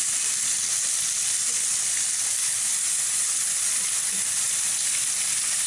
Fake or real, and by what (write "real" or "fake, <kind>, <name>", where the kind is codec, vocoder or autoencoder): fake, vocoder, BigVGAN v2